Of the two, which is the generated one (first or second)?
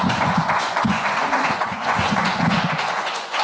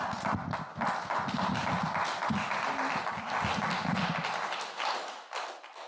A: first